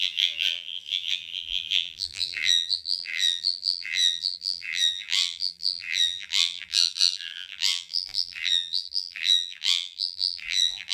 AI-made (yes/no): yes